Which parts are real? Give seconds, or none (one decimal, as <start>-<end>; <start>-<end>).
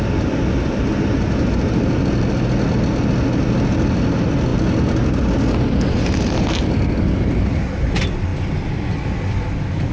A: 0.0-9.9